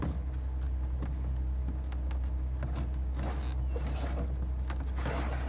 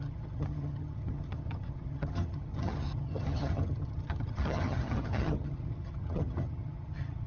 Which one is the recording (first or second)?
first